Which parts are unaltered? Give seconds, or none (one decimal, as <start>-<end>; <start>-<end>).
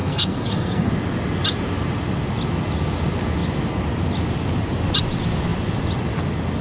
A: 0.9-6.6